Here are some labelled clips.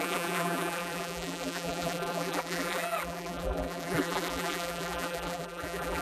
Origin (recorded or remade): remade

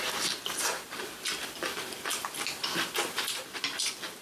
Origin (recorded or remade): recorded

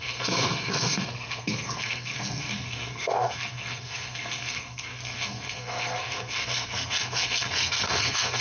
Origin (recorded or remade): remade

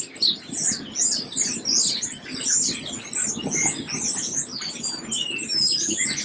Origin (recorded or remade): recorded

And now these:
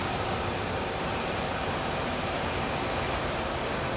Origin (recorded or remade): remade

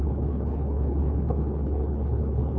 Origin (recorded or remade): remade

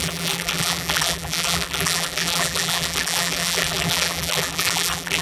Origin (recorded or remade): remade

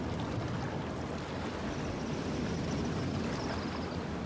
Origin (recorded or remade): recorded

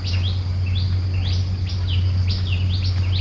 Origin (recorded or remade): recorded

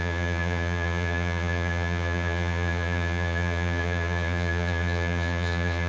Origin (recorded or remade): remade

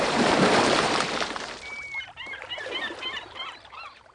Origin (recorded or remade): remade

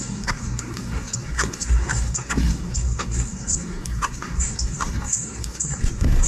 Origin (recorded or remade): remade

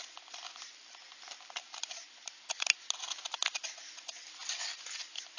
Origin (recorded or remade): recorded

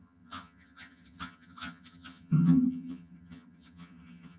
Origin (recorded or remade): remade